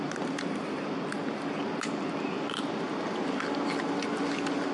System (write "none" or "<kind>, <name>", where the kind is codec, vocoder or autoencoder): none